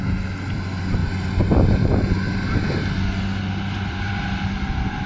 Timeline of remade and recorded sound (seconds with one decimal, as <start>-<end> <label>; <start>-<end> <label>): 0.0-5.1 recorded